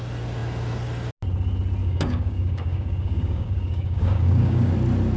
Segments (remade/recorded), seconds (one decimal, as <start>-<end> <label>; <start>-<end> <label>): 0.0-1.8 recorded; 1.8-4.7 remade; 4.7-5.2 recorded